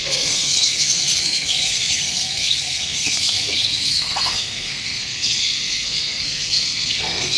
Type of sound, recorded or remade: remade